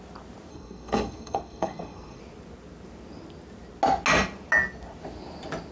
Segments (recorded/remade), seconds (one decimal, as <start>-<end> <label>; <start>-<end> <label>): 0.0-0.5 recorded; 0.5-2.2 remade; 2.2-5.7 recorded